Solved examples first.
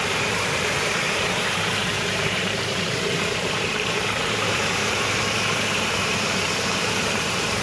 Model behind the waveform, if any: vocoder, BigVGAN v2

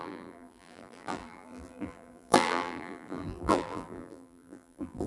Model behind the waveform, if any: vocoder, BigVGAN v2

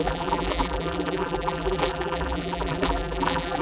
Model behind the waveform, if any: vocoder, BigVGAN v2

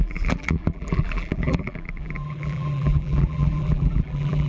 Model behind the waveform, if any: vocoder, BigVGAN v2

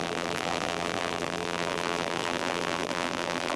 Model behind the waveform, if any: vocoder, BigVGAN v2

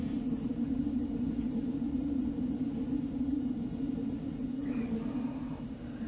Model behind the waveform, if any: vocoder, BigVGAN v2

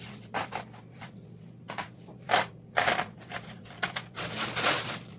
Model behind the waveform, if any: vocoder, BigVGAN v2